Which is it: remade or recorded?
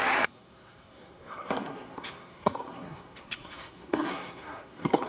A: remade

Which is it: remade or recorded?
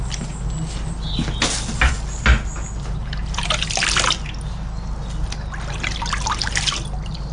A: recorded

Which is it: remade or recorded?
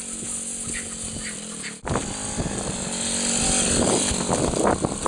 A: recorded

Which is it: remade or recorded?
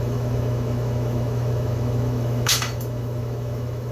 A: remade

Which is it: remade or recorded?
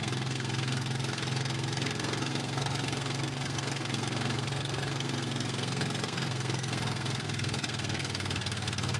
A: remade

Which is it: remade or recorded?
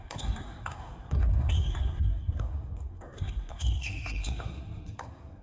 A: remade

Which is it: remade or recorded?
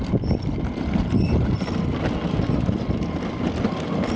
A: recorded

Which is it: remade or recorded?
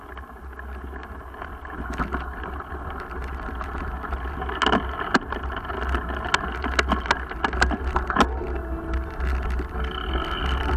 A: recorded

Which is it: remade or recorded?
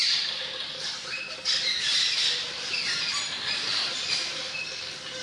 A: recorded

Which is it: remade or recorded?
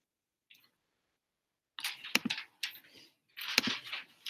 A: recorded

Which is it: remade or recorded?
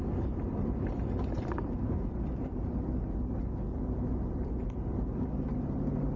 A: remade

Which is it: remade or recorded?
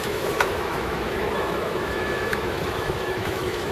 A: remade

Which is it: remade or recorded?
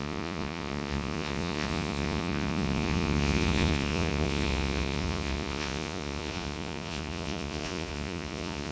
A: remade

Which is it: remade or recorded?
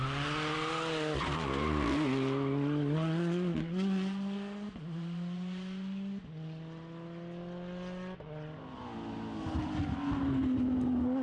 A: recorded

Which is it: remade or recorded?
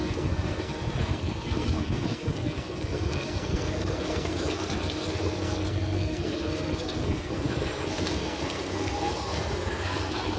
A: remade